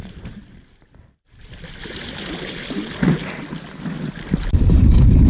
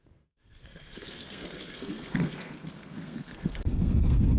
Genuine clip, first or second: first